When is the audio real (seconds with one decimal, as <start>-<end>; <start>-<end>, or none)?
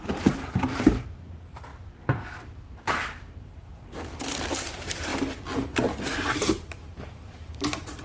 1.7-3.0; 5.1-6.3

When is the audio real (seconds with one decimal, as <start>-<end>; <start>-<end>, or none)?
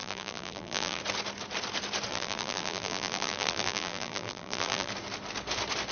1.0-2.1; 4.9-5.9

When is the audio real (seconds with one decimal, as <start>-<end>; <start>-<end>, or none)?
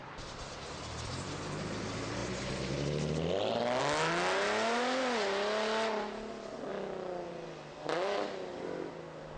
1.4-9.4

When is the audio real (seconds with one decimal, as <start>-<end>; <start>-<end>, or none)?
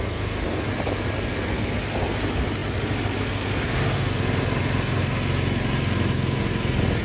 0.0-7.0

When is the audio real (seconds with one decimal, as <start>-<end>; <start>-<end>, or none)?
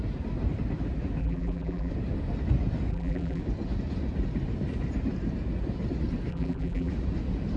0.0-1.2; 1.9-2.9; 3.4-6.3; 6.9-7.6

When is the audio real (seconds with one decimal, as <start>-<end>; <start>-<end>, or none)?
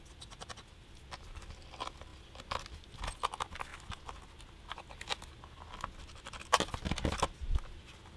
0.0-8.2